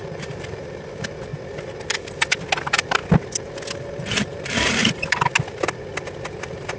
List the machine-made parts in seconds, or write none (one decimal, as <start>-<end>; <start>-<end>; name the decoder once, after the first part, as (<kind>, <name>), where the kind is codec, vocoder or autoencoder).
0.0-1.3 (vocoder, BigVGAN v2); 2.6-3.0; 4.0-4.8; 6.3-6.8